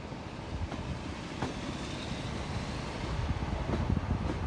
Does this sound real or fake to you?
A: real